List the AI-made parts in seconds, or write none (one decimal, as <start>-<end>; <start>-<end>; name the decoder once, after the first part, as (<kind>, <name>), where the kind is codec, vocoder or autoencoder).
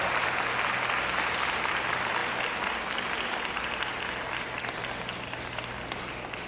none